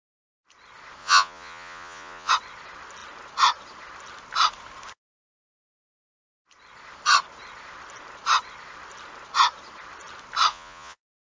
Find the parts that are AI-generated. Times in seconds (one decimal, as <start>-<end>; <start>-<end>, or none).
1.0-2.3; 10.5-11.3